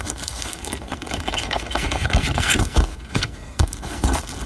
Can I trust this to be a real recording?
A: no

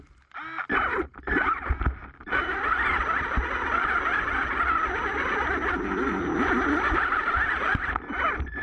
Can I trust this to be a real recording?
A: yes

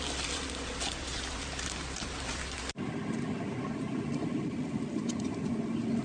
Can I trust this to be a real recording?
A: yes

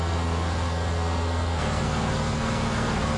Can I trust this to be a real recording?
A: no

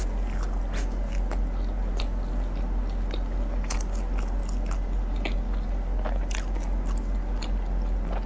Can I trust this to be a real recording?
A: yes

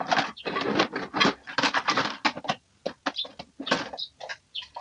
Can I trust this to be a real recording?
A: yes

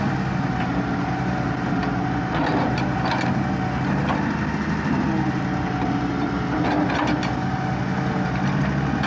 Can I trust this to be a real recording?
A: yes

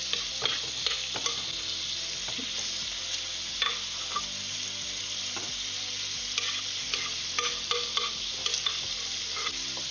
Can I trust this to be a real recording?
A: yes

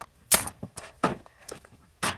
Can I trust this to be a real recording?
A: no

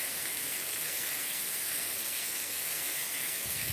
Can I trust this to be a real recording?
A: no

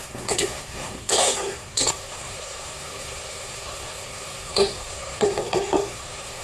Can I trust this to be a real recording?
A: no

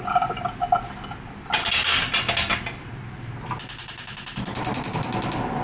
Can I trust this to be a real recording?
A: yes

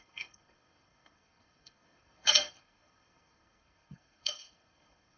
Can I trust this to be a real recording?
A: no